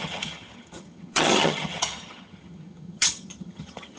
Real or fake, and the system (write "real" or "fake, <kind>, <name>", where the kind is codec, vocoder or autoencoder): fake, vocoder, HiFi-GAN